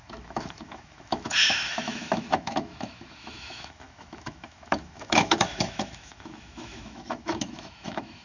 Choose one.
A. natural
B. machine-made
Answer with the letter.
B